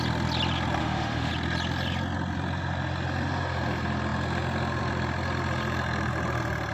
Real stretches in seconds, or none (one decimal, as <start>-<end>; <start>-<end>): 0.0-0.8; 1.3-6.7